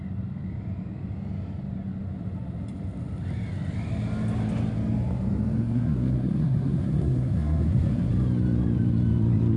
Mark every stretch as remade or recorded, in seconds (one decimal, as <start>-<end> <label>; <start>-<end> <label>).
0.0-5.6 recorded; 5.6-8.1 remade; 8.1-9.6 recorded